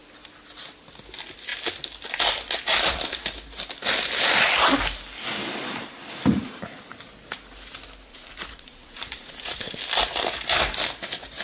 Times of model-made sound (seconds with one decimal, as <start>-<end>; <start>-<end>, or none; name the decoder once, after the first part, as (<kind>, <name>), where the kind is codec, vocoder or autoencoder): 8.1-9.8 (vocoder, Vocos)